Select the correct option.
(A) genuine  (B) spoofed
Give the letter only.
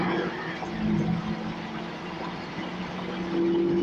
A